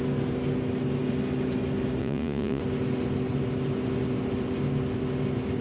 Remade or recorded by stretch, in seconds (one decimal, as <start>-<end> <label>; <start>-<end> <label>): 0.0-2.0 recorded; 2.0-2.6 remade; 2.6-5.6 recorded

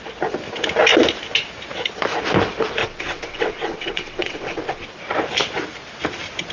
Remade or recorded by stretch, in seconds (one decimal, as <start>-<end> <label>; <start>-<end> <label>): 0.0-2.8 recorded; 2.8-4.9 remade; 4.9-6.5 recorded

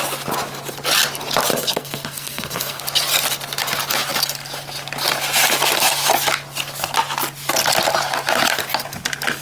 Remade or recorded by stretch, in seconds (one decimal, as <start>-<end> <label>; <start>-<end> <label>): 0.0-1.5 recorded; 1.5-2.8 remade; 2.8-9.4 recorded

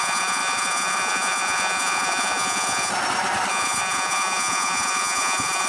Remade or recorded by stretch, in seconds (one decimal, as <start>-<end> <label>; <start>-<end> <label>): 0.0-2.9 remade; 2.9-3.5 recorded; 3.5-5.7 remade

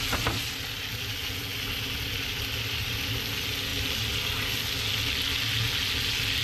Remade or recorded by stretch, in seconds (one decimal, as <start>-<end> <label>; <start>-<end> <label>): 0.0-6.4 recorded